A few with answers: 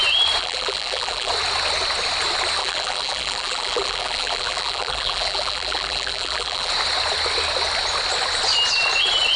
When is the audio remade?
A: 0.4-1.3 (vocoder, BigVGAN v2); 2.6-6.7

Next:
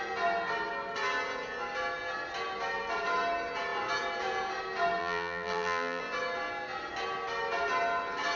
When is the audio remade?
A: 5.0-6.0 (vocoder, BigVGAN v2)